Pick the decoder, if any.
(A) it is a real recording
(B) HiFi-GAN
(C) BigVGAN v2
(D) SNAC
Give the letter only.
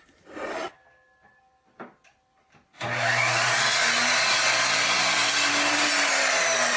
A